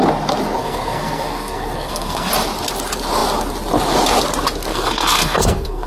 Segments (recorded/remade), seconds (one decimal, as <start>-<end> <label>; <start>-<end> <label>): 0.0-0.6 recorded; 0.6-2.3 remade; 2.3-4.7 recorded; 4.7-5.9 remade